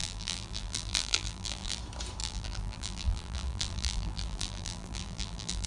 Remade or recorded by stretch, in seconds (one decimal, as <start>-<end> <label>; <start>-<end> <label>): 0.0-1.8 remade; 1.8-2.2 recorded; 2.2-5.7 remade